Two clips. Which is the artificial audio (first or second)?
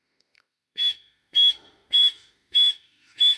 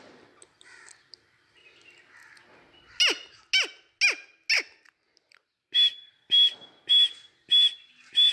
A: first